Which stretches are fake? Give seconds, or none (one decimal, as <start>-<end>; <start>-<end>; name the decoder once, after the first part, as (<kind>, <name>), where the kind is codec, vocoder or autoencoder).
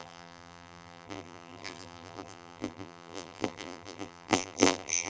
0.0-5.1 (vocoder, BigVGAN v2)